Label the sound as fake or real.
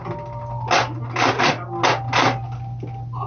real